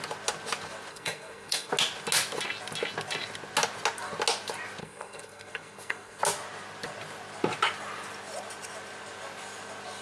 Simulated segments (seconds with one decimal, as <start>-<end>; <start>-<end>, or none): 0.9-1.7; 4.8-6.2